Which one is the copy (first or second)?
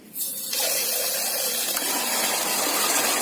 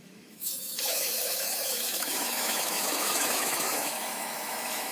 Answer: second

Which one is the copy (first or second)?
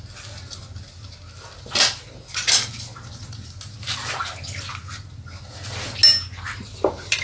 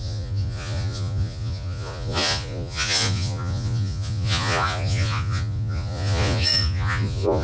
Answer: second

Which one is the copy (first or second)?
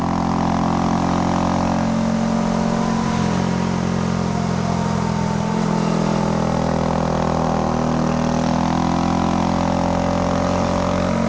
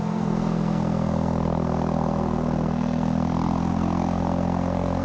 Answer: second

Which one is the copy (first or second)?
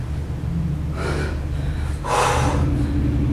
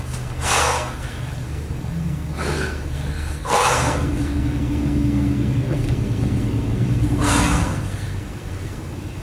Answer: second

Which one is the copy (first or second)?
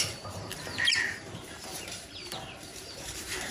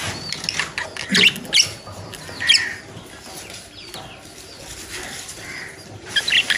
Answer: first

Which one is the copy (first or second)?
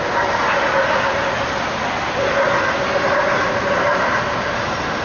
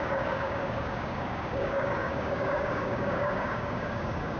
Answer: second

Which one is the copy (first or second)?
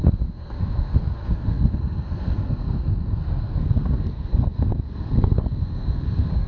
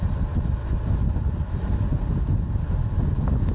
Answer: first